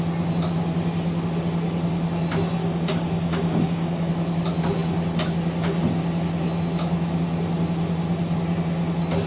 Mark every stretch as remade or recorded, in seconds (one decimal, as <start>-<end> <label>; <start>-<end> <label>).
0.0-2.6 recorded; 2.6-4.1 remade; 4.1-9.3 recorded